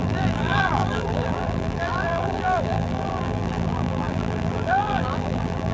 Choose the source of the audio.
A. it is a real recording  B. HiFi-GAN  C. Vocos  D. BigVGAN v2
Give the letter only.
D